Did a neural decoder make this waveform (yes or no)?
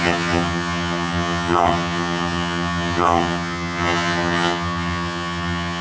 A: yes